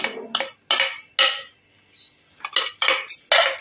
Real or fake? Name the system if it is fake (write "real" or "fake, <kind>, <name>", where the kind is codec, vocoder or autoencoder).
real